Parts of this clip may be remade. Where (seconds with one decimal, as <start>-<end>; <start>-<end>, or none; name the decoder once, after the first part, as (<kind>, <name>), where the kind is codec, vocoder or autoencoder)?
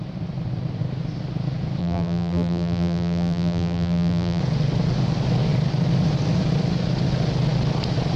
1.8-4.4 (vocoder, BigVGAN v2)